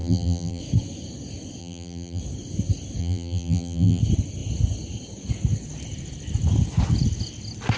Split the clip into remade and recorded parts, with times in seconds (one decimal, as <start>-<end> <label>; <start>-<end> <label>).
0.0-0.6 remade; 0.6-1.6 recorded; 1.6-2.2 remade; 2.2-3.0 recorded; 3.0-4.0 remade; 4.0-7.8 recorded